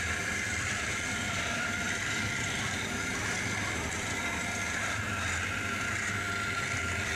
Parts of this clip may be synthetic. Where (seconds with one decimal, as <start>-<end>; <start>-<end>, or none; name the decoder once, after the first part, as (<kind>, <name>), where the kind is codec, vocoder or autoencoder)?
0.0-3.1 (vocoder, BigVGAN v2); 5.5-7.2